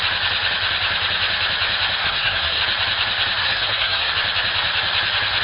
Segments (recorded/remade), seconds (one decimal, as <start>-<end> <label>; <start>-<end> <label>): 0.0-2.0 recorded; 2.0-2.6 remade; 2.6-3.4 recorded; 3.4-4.1 remade; 4.1-5.4 recorded